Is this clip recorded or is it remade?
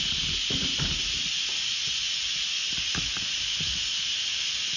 recorded